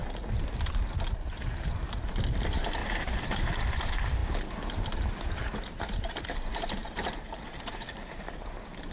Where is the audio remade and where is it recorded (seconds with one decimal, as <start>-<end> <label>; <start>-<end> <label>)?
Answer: 0.0-2.8 recorded; 2.8-3.5 remade; 3.5-6.8 recorded; 6.8-8.3 remade; 8.3-8.9 recorded